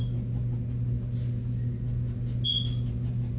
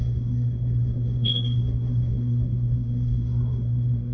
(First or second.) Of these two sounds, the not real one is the second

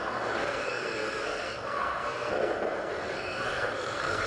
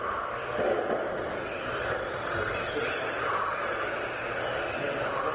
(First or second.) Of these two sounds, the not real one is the first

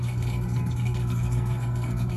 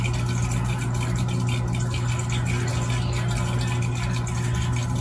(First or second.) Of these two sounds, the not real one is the first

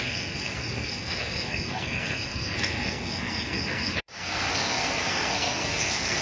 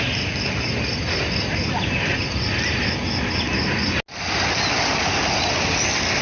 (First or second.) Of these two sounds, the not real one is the first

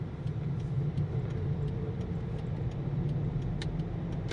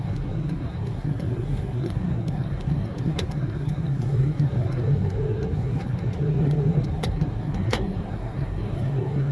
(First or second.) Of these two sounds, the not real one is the second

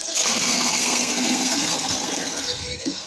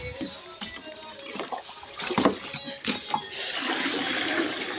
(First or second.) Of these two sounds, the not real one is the first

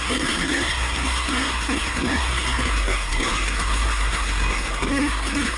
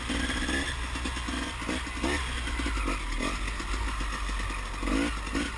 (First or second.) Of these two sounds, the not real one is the first